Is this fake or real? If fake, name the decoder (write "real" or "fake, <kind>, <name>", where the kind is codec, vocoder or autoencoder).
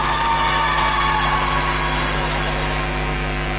real